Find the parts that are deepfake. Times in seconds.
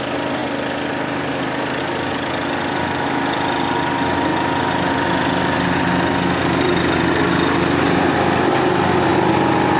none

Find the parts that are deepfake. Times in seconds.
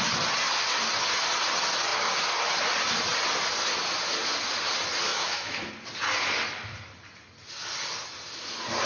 5.1-5.7 (autoencoder, DAC-VAE)